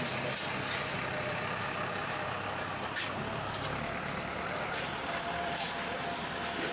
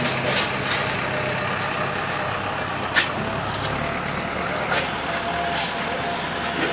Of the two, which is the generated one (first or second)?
first